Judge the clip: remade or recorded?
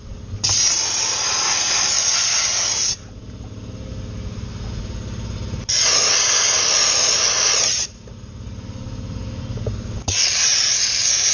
recorded